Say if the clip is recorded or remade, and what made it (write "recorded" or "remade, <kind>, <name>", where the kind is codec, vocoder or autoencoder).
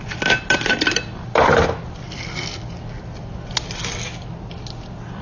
recorded